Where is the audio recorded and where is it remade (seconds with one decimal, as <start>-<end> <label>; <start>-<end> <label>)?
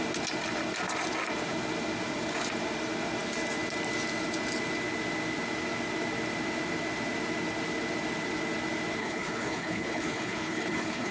0.0-9.0 recorded; 9.0-11.1 remade